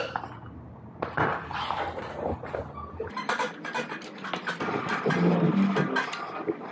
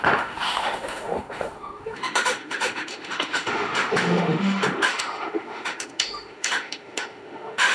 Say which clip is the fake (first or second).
second